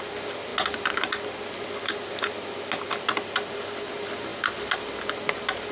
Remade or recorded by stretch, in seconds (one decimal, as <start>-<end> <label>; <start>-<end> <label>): 0.0-5.7 recorded